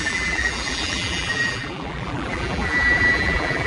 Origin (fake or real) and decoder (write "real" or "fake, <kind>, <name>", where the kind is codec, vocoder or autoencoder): fake, vocoder, BigVGAN v2